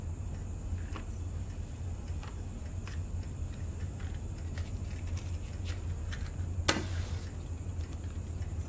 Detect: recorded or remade recorded